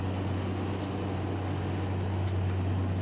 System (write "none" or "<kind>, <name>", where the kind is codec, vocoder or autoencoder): none